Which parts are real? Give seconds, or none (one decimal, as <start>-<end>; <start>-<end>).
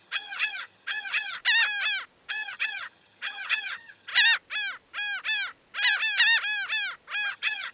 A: 1.4-2.3; 4.1-7.3